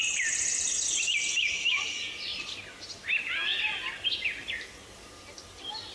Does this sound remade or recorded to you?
recorded